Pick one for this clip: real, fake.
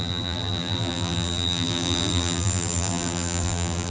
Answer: fake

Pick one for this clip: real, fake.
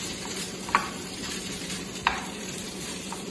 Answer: fake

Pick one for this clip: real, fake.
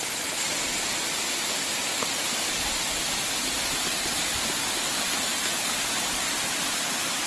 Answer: real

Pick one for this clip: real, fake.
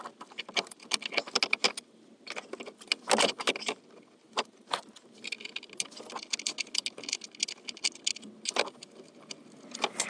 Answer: real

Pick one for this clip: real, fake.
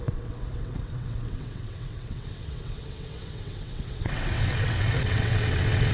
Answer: fake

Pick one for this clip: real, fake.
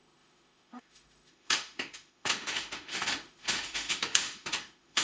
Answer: fake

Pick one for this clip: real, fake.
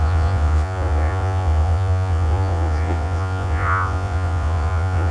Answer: fake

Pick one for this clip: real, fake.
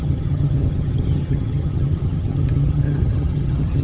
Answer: fake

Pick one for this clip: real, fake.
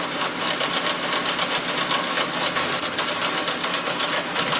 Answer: real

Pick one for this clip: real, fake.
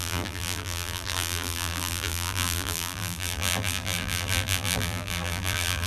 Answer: fake